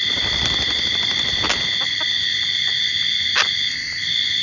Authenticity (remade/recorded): recorded